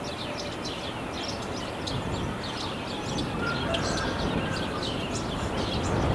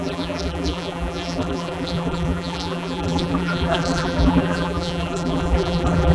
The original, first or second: first